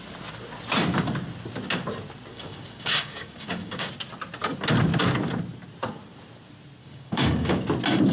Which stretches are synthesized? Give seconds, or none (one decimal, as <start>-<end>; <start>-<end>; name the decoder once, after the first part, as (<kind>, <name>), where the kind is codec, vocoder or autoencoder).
2.3-3.9 (codec, DAC); 6.8-7.6